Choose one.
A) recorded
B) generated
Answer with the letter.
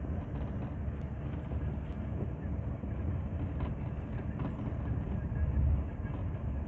A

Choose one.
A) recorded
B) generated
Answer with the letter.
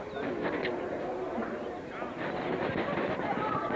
A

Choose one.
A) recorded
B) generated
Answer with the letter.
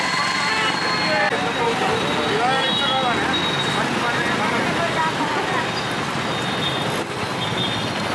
A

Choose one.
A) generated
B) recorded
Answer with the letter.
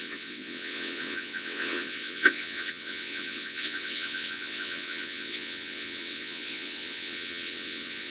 A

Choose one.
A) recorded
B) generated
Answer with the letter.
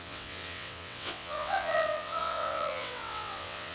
B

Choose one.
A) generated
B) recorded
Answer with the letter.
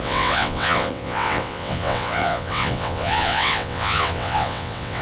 A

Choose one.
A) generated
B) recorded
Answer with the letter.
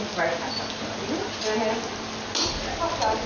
B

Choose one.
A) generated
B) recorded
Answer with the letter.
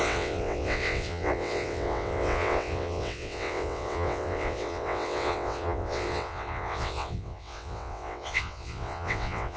A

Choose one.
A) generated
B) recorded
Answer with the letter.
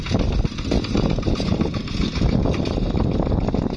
B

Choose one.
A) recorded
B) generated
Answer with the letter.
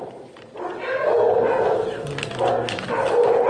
A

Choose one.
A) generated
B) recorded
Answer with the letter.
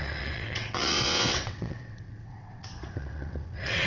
A